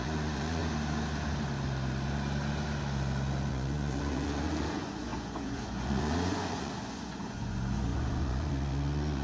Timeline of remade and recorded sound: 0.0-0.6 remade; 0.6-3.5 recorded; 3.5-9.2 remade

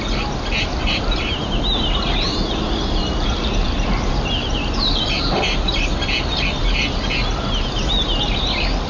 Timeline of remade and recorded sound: 0.0-0.7 recorded; 0.7-5.3 remade; 5.3-8.9 recorded